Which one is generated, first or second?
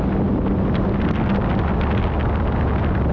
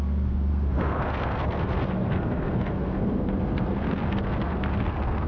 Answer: second